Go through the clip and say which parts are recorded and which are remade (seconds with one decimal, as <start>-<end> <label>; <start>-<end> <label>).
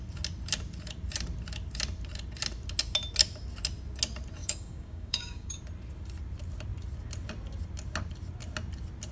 0.0-4.4 recorded; 4.4-5.6 remade; 5.6-9.1 recorded